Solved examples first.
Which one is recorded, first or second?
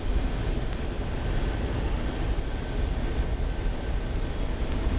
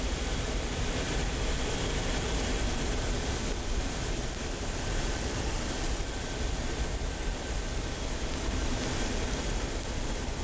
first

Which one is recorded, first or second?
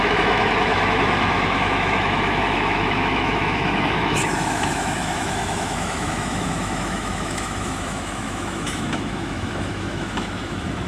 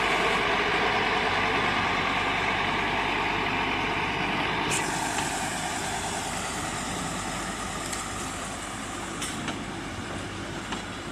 second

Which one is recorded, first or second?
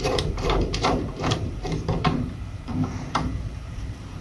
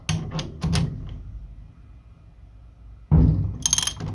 second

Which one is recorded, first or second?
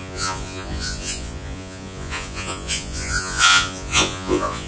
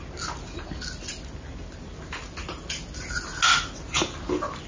second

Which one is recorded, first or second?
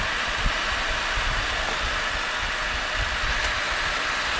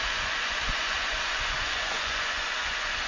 first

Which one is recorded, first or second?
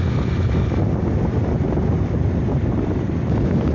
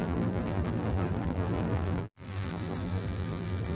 first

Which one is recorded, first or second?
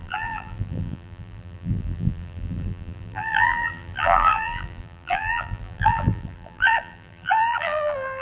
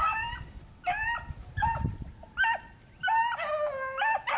second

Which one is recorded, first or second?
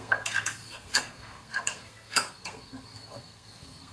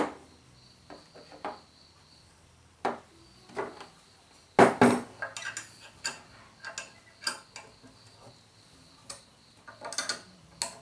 second